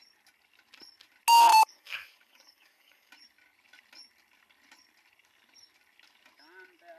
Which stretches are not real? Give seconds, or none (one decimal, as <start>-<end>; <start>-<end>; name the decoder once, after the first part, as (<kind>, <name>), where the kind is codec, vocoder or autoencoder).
1.5-3.1 (codec, DAC)